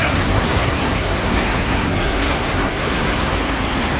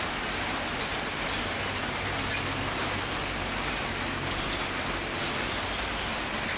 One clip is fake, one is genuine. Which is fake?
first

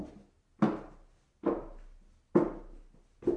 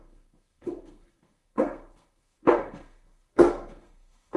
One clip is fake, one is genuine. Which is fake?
second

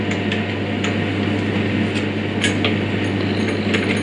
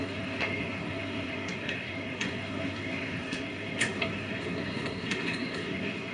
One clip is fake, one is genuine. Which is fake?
second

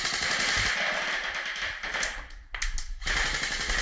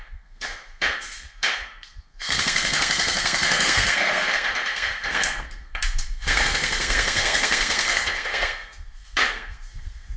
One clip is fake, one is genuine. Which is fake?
second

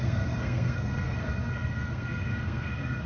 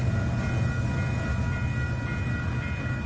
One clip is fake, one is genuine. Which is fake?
first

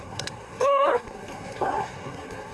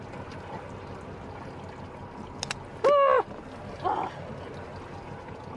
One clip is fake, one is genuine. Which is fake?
first